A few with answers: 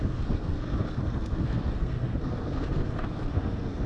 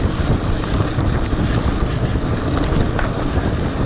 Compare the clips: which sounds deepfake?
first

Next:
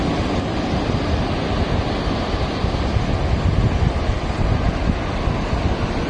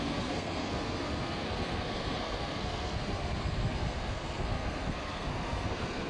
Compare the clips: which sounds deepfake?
second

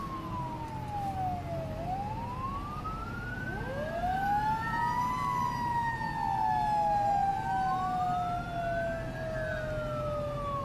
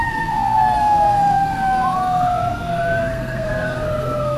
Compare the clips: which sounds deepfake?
second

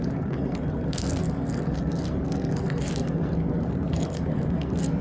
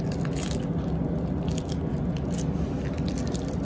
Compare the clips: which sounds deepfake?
first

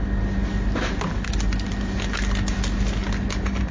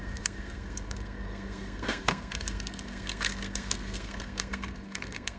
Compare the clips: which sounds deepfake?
second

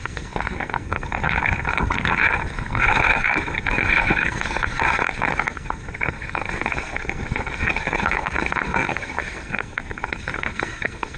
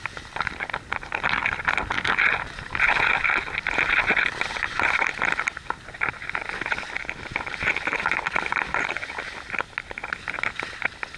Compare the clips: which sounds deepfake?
first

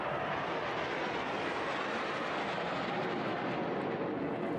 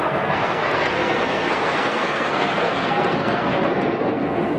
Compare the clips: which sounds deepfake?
second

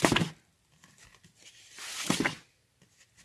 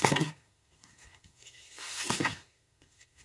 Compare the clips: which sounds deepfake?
second